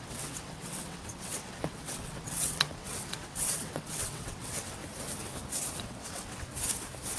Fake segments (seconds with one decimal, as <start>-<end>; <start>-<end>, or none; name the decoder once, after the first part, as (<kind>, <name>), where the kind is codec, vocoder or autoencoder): 0.0-4.8 (vocoder, WaveNeXt); 5.8-6.5